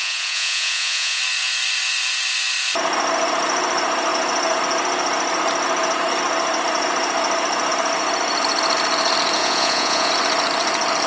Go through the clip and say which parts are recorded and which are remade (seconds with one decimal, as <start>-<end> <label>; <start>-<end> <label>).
0.0-1.2 remade; 1.2-9.4 recorded; 9.4-10.1 remade; 10.1-11.1 recorded

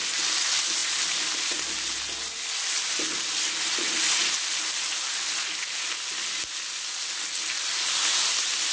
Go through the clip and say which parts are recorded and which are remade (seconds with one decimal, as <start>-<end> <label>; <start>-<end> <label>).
0.0-8.7 recorded

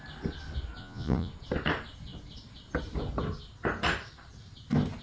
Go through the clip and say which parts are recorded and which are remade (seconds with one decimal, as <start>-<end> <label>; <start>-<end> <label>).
0.0-0.8 recorded; 0.8-1.3 remade; 1.3-5.0 recorded

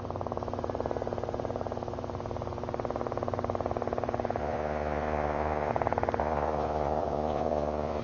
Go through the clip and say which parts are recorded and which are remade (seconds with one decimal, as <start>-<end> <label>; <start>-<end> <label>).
0.0-4.4 recorded; 4.4-5.7 remade; 5.7-6.2 recorded; 6.2-8.0 remade

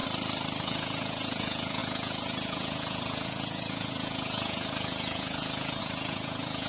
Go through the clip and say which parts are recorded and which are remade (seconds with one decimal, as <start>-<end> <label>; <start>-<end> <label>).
0.0-0.6 recorded; 0.6-6.7 remade

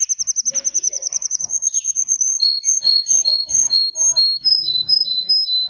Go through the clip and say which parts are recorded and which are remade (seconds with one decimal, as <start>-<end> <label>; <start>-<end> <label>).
0.0-0.7 recorded; 0.7-3.8 remade; 3.8-4.5 recorded; 4.5-5.3 remade; 5.3-5.7 recorded

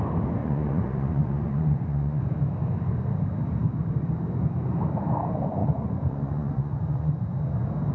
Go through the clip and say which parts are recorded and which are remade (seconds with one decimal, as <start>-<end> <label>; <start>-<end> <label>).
0.0-0.4 recorded; 0.4-2.2 remade; 2.2-5.6 recorded; 5.6-7.1 remade; 7.1-7.9 recorded

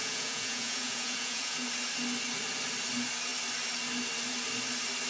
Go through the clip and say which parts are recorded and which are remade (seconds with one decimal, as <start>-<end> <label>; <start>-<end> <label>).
0.0-1.7 remade; 1.7-5.1 recorded